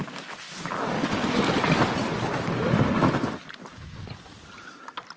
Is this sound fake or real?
real